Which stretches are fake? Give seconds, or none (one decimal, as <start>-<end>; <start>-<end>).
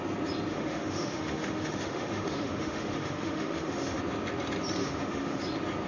0.5-4.0; 4.8-5.4